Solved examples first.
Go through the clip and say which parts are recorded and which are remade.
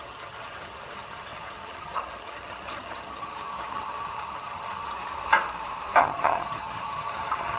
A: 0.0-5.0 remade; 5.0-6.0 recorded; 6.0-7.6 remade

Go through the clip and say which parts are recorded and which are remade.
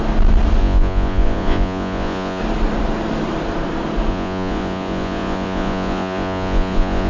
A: 0.0-0.6 recorded; 0.6-2.4 remade; 2.4-4.1 recorded; 4.1-7.1 remade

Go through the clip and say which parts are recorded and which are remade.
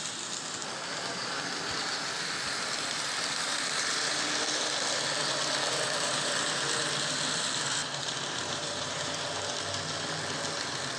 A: 0.0-7.8 recorded; 7.8-9.6 remade; 9.6-11.0 recorded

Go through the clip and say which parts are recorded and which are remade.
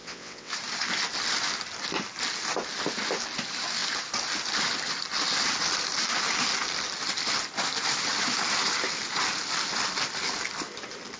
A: 0.0-0.5 remade; 0.5-11.2 recorded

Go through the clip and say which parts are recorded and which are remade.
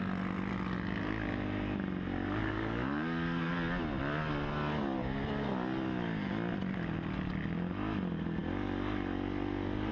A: 0.0-2.4 recorded; 2.4-3.5 remade; 3.5-9.9 recorded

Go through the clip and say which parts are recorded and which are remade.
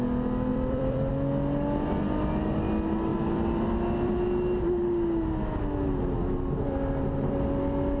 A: 0.0-0.5 recorded; 0.5-1.1 remade; 1.1-3.1 recorded; 3.1-4.1 remade; 4.1-8.0 recorded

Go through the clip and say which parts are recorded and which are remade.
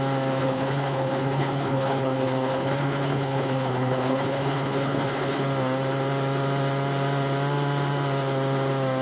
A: 0.0-0.4 recorded; 0.4-5.4 remade; 5.4-9.0 recorded